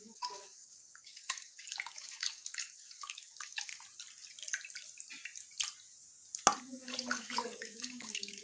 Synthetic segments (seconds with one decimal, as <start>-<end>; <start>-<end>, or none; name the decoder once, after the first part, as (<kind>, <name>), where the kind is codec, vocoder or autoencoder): 0.0-3.7 (codec, DAC); 6.6-8.4